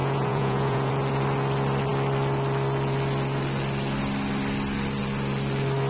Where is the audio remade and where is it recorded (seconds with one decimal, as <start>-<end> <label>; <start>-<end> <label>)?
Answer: 0.0-0.9 remade; 0.9-5.9 recorded